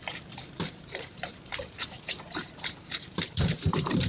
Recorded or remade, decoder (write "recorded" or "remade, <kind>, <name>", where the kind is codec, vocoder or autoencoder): remade, vocoder, BigVGAN v2